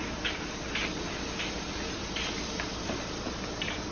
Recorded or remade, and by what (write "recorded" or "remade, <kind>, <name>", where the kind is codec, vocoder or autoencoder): recorded